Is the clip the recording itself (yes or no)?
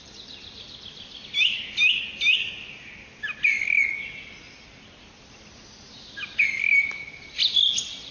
yes